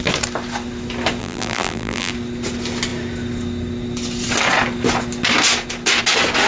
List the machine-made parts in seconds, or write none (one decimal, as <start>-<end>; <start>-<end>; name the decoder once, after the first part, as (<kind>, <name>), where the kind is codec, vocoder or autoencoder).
1.2-2.1 (vocoder, BigVGAN v2)